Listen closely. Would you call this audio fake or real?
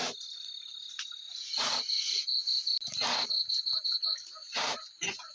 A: real